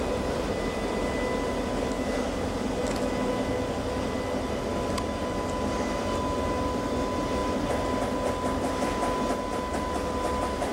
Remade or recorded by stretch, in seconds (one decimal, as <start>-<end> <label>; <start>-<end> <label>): 0.0-10.7 recorded